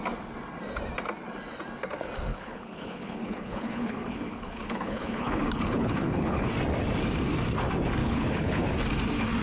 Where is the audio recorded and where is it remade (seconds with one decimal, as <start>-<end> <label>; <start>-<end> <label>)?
0.0-2.3 recorded; 2.3-6.5 remade; 6.5-8.0 recorded; 8.0-8.7 remade; 8.7-9.4 recorded